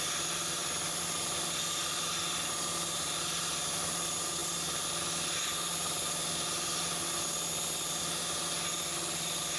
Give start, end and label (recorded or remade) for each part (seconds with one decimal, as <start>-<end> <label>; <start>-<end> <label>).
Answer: 0.0-9.6 recorded